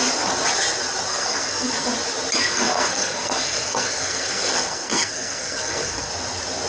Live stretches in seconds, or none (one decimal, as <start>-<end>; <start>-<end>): 0.0-1.1; 1.9-2.4; 6.1-6.7